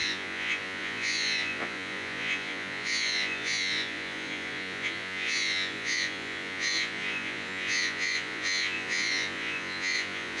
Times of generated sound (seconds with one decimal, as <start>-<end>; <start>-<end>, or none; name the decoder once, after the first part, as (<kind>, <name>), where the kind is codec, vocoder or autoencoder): 0.0-10.4 (vocoder, Vocos)